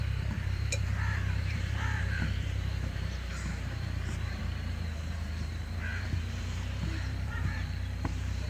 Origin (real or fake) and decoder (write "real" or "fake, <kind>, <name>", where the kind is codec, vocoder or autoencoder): fake, vocoder, BigVGAN v2